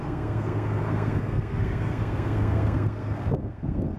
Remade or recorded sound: remade